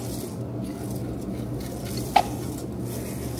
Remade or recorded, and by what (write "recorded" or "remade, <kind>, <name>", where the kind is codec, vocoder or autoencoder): recorded